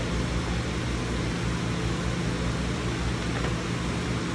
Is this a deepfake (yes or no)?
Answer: no